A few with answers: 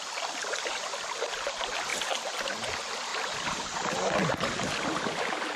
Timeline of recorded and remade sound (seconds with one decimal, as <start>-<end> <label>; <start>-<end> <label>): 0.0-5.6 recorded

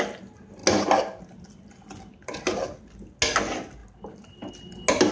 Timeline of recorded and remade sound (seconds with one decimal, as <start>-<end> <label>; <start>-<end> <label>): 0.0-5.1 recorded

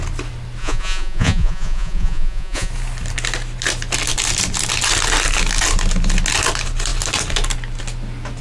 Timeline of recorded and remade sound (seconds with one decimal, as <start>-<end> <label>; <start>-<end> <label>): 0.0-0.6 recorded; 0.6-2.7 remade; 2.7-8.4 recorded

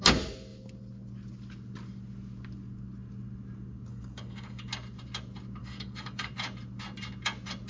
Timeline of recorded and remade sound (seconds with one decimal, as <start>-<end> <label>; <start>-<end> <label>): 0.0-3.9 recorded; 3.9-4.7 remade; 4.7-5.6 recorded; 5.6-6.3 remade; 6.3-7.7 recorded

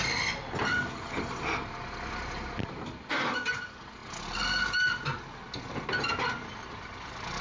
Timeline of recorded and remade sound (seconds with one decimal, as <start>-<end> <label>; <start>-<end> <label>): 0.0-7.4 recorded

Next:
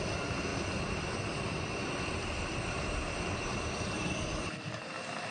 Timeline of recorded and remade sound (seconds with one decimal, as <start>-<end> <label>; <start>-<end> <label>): 0.0-5.3 recorded